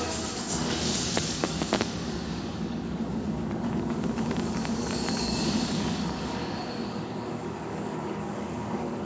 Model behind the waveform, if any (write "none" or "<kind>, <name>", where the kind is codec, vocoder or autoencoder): codec, DAC